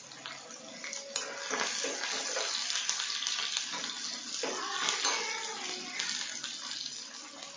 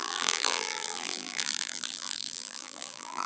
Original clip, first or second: first